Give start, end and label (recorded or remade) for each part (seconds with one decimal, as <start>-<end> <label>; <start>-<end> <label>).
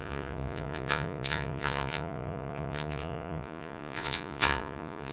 0.0-5.1 remade